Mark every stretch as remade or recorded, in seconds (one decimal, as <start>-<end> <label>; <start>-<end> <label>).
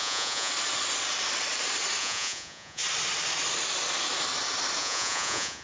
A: 0.0-0.5 remade; 0.5-2.0 recorded; 2.0-2.8 remade; 2.8-4.8 recorded; 4.8-5.6 remade